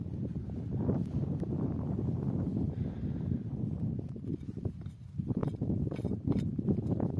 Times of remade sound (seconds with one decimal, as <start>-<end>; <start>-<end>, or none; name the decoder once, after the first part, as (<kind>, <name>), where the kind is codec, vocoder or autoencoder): 0.0-1.9 (vocoder, BigVGAN v2); 2.5-4.7; 5.4-6.2

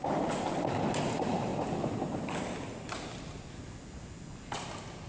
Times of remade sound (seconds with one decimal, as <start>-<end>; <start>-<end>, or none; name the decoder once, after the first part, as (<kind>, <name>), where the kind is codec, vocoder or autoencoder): none

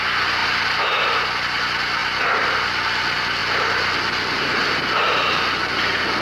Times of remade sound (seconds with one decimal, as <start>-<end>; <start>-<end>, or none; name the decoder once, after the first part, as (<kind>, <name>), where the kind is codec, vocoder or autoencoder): 0.4-1.0 (vocoder, BigVGAN v2)

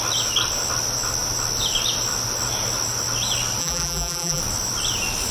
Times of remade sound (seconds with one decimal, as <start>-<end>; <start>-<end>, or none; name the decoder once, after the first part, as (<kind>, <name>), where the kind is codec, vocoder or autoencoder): 3.6-4.4 (vocoder, BigVGAN v2)

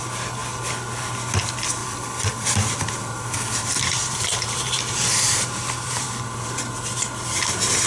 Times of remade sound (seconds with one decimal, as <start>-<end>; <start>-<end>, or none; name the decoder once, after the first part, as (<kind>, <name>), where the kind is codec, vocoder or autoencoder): 1.8-6.5 (vocoder, BigVGAN v2)